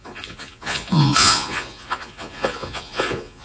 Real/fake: fake